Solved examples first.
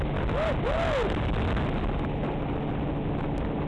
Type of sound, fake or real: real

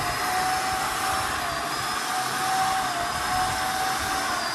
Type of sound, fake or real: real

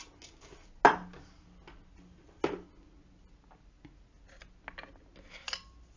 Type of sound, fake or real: real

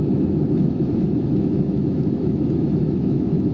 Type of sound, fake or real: fake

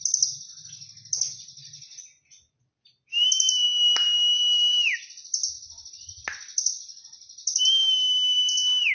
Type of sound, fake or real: real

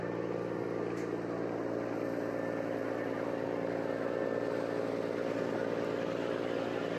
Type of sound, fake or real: real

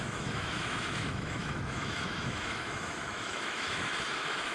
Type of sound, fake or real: fake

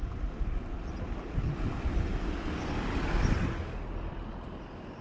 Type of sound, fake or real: real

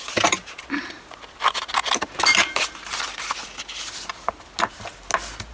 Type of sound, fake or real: real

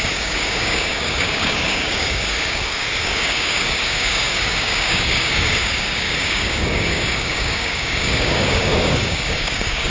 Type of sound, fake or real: fake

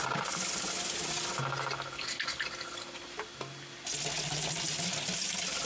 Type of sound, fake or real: real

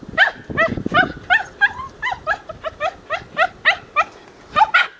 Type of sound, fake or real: real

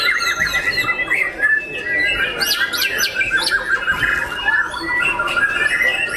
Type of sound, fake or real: real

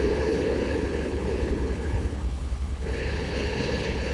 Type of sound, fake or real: fake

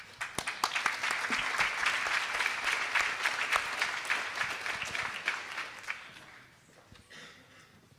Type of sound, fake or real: real